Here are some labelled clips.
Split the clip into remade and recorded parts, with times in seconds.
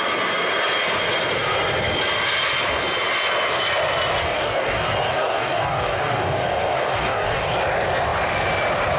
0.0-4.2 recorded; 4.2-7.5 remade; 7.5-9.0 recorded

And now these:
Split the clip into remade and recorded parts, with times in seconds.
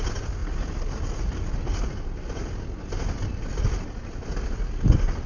0.0-5.3 recorded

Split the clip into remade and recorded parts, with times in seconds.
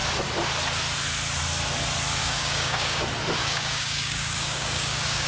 0.0-2.2 recorded; 2.2-3.0 remade; 3.0-3.4 recorded; 3.4-5.3 remade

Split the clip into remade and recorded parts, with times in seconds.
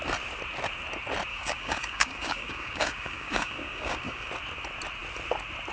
0.0-1.3 recorded; 1.3-4.3 remade; 4.3-5.7 recorded